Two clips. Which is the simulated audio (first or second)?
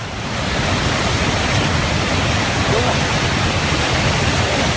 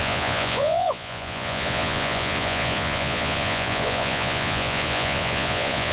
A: second